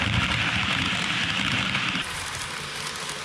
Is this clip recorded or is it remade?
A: remade